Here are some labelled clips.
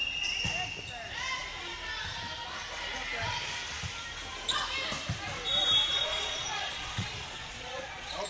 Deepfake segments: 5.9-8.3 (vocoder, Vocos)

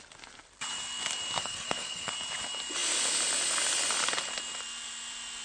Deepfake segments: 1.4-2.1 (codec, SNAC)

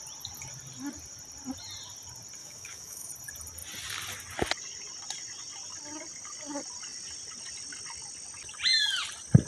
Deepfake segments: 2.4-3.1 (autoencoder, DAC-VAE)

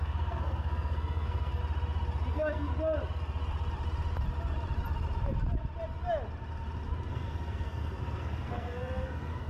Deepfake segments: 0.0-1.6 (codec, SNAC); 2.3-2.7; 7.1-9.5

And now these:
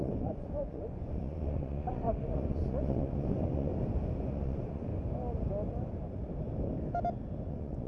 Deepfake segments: 0.0-3.7 (vocoder, Vocos); 4.2-4.9; 7.5-7.9